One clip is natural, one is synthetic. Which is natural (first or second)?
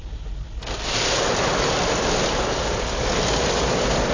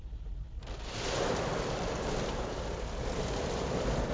first